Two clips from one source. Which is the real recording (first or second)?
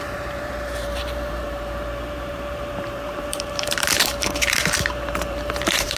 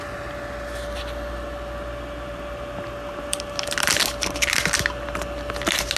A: second